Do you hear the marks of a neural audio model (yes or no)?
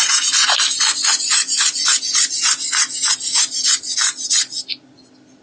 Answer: no